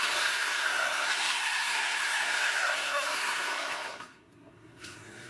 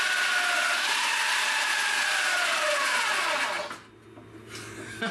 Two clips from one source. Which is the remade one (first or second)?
first